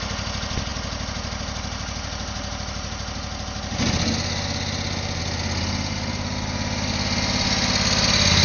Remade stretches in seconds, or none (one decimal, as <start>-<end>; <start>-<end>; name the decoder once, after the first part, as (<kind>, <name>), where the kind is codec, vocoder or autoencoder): none